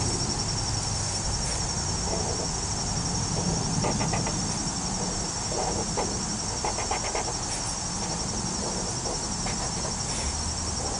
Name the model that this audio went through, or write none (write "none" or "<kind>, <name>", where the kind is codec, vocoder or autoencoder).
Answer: none